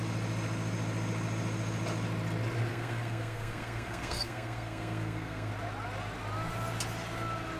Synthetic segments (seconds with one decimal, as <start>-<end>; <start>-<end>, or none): 2.7-5.5